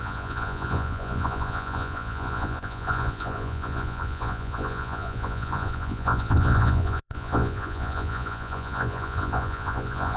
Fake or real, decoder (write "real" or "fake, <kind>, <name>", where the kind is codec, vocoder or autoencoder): fake, vocoder, Vocos